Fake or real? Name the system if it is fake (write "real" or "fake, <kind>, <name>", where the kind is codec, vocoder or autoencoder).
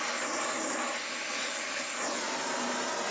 real